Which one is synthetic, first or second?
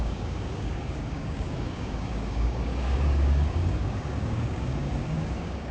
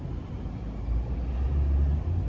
first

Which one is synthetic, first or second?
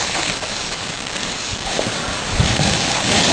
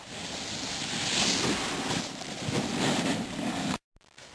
first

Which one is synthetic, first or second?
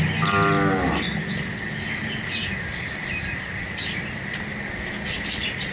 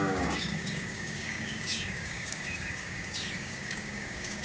second